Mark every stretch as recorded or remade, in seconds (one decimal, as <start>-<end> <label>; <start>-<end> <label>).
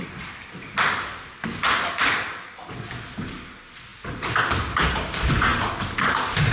0.0-6.5 recorded